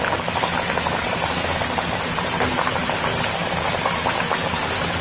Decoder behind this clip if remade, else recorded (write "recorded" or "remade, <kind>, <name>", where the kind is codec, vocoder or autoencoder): recorded